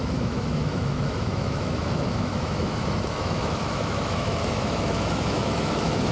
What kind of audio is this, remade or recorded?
remade